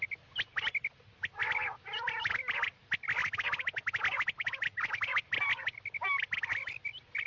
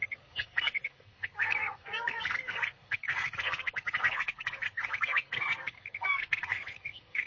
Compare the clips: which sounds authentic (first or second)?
first